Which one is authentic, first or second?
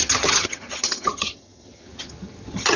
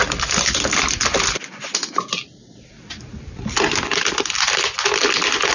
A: second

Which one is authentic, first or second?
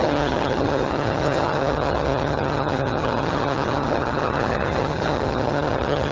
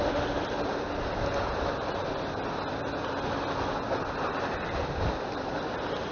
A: second